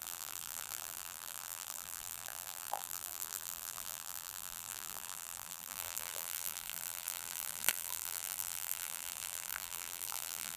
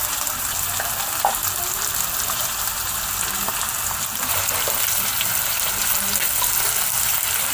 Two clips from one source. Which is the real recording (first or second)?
second